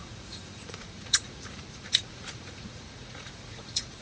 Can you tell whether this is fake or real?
fake